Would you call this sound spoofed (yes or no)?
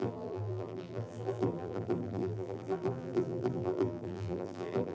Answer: yes